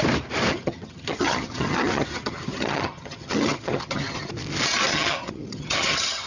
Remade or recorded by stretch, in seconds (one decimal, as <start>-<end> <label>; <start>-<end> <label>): 0.0-0.5 recorded; 0.5-4.3 remade; 4.3-4.9 recorded; 4.9-6.3 remade